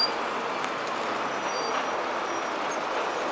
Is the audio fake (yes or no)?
no